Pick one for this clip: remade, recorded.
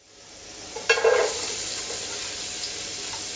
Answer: recorded